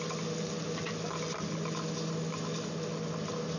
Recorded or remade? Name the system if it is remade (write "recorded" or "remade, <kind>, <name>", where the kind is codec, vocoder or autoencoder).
recorded